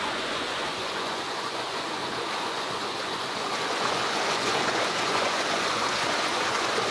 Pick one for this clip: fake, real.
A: fake